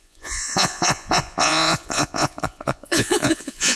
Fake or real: fake